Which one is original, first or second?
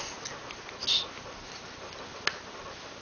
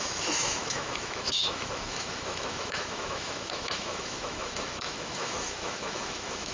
first